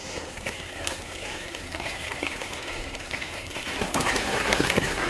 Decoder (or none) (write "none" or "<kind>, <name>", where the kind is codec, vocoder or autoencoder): codec, SNAC